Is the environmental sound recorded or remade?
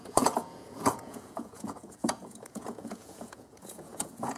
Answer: remade